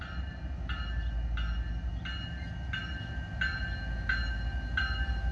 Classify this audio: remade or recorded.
recorded